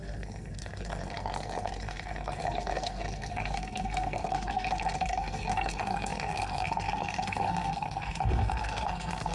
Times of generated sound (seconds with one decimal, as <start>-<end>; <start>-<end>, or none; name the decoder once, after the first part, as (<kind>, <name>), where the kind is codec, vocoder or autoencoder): 0.0-9.3 (codec, SNAC)